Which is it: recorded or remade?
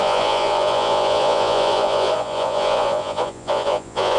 remade